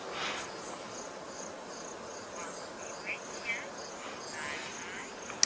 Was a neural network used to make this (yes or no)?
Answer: no